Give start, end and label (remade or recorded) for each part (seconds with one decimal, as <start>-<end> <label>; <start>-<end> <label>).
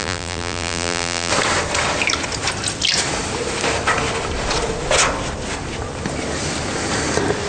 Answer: 0.0-1.3 remade; 1.3-7.5 recorded